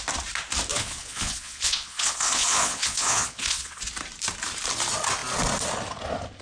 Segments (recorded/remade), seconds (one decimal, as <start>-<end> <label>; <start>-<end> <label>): 0.0-0.7 recorded; 0.7-3.8 remade; 3.8-6.4 recorded